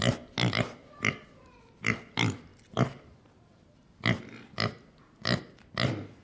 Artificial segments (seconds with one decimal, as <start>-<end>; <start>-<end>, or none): none

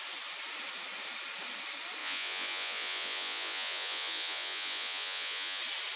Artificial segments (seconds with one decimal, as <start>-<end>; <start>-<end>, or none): 2.0-5.6

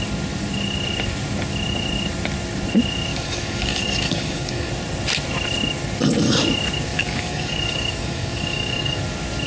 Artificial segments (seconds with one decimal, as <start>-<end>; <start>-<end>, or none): 3.1-4.7; 6.9-9.0

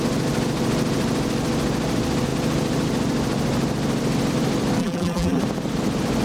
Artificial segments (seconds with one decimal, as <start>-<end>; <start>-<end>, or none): 4.8-5.4

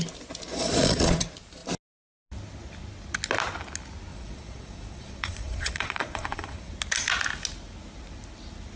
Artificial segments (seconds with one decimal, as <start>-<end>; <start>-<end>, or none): 0.5-1.2; 4.1-6.7